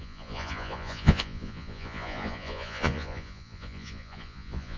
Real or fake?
fake